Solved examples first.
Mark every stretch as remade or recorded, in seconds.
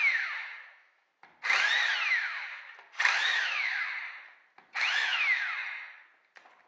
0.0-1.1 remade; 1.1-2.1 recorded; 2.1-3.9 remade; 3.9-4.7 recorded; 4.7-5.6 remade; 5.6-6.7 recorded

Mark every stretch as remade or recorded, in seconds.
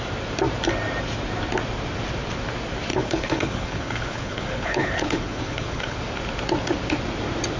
0.0-2.9 recorded; 2.9-6.0 remade; 6.0-7.6 recorded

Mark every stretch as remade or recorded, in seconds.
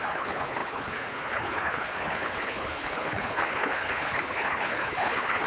0.0-5.5 remade